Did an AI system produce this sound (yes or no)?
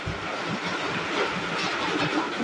no